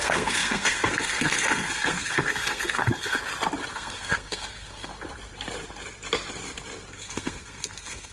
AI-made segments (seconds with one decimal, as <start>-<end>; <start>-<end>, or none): 0.0-3.2; 3.7-4.9; 6.9-8.1